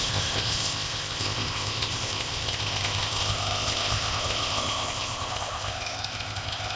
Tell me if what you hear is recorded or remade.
remade